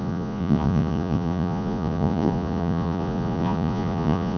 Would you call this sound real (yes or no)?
no